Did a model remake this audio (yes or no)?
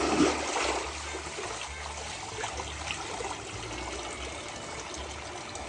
no